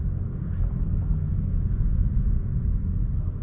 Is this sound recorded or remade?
recorded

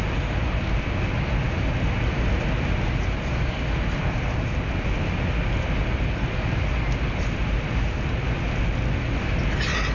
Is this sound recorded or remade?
recorded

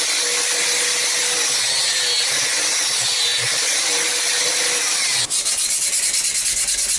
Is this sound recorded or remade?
recorded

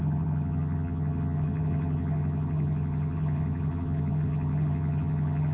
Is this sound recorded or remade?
remade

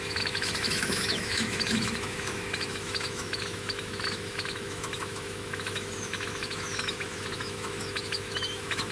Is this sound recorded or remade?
remade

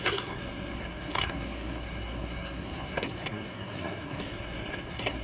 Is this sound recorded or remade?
remade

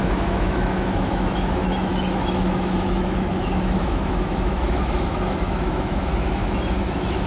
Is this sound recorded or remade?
remade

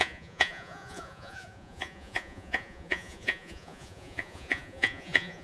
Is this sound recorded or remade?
remade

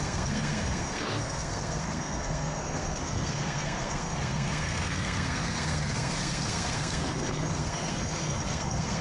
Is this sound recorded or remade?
remade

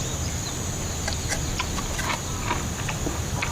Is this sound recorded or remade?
remade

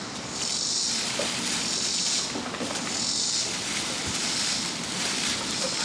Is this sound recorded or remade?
recorded